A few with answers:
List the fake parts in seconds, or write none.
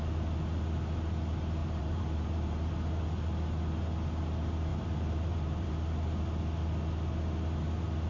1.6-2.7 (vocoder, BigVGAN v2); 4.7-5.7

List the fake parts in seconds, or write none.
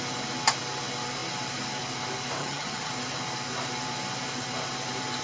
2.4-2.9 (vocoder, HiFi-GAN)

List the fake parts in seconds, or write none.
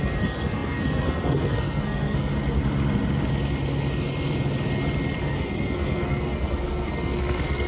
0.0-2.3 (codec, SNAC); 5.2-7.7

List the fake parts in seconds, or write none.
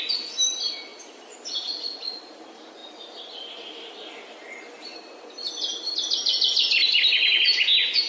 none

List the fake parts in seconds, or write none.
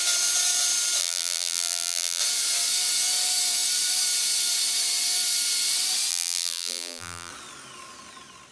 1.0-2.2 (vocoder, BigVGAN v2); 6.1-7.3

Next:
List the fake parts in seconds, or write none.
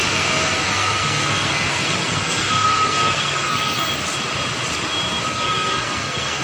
0.0-3.8 (codec, SNAC); 5.3-6.4